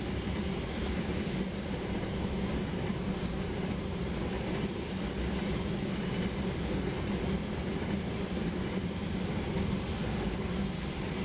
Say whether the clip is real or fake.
real